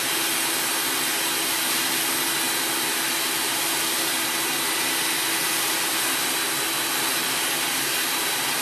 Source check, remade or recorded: recorded